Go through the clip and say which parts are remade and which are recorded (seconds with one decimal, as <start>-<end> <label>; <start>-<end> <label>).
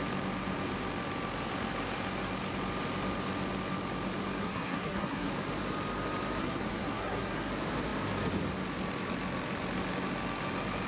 0.0-4.4 recorded; 4.4-5.3 remade; 5.3-6.4 recorded; 6.4-7.5 remade; 7.5-10.9 recorded